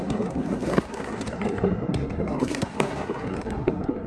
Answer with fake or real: fake